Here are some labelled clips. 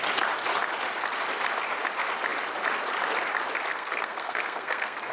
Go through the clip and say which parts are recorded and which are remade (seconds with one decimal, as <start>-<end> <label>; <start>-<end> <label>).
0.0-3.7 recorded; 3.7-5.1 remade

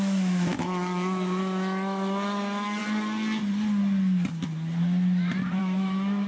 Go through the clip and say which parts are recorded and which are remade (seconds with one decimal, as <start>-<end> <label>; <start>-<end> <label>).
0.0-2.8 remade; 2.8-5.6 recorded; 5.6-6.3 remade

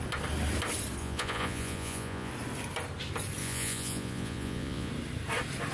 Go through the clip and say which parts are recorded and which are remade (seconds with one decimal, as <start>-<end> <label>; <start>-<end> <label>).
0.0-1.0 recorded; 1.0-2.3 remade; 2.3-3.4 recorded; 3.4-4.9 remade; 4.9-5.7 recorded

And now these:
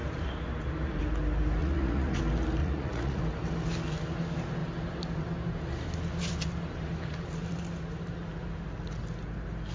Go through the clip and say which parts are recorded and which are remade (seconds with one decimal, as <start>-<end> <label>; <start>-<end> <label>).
0.0-1.6 recorded; 1.6-2.2 remade; 2.2-2.6 recorded; 2.6-3.2 remade; 3.2-9.7 recorded

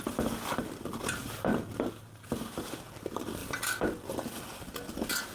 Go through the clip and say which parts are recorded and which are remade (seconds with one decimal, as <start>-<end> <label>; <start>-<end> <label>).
0.0-5.3 recorded

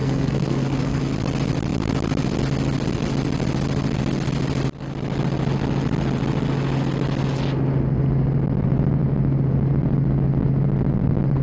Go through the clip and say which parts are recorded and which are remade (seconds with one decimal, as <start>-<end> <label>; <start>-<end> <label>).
0.0-1.0 remade; 1.0-11.4 recorded